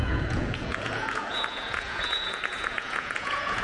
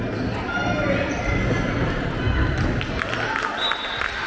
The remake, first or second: first